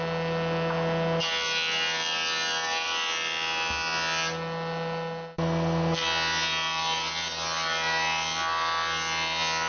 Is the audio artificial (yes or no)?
no